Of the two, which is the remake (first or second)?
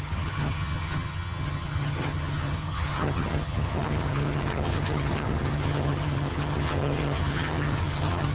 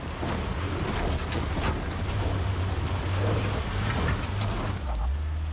first